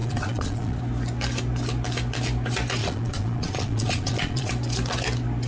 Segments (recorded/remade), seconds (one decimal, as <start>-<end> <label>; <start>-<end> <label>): 0.0-0.8 remade; 0.8-2.8 recorded; 2.8-4.5 remade; 4.5-5.5 recorded